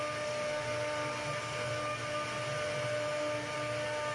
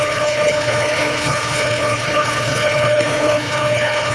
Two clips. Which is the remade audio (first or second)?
second